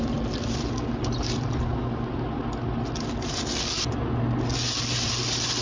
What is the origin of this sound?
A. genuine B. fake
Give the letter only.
A